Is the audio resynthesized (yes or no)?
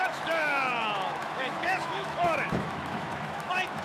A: yes